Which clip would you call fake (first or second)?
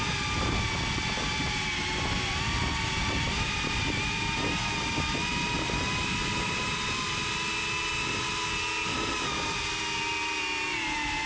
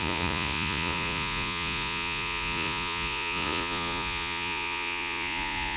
second